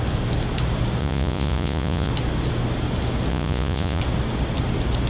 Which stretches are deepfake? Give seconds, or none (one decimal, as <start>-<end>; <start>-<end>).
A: 1.0-2.1; 3.3-4.0